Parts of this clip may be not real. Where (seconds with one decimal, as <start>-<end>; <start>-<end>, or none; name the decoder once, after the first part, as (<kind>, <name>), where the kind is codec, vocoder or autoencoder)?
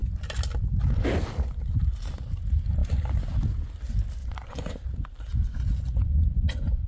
4.2-4.8 (vocoder, Vocos); 5.4-6.9